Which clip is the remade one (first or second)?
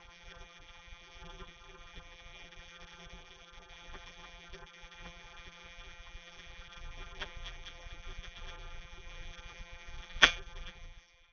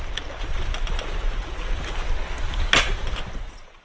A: first